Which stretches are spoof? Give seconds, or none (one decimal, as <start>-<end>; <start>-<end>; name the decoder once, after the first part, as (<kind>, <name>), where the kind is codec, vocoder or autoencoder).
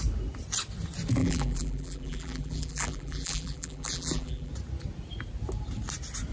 1.2-4.5 (vocoder, BigVGAN v2)